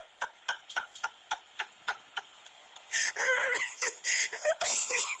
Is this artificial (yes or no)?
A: yes